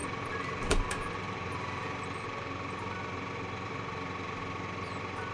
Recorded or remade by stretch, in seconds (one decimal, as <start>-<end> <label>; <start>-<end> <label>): 0.0-2.0 remade; 2.0-5.3 recorded